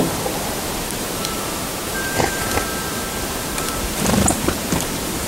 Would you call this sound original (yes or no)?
no